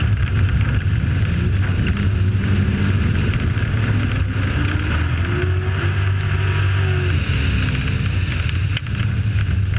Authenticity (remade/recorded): recorded